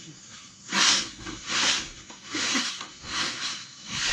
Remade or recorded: remade